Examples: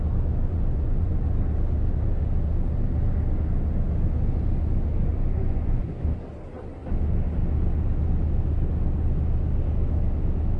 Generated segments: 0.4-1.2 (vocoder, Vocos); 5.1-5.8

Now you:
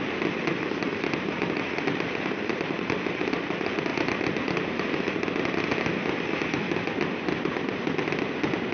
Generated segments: 0.9-1.6 (vocoder, BigVGAN v2); 3.9-4.4

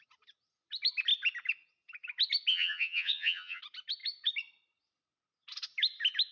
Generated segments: 2.5-3.6 (vocoder, HiFi-GAN)

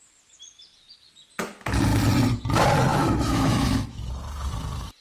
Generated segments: 2.9-4.1 (autoencoder, DAC-VAE)

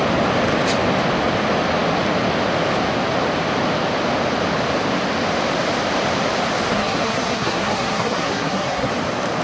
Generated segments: 6.7-8.9 (codec, SNAC)

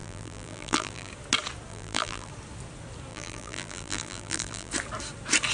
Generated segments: 0.0-1.1 (vocoder, BigVGAN v2); 1.7-2.3; 3.1-4.7